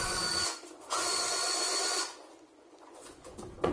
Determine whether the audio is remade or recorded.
remade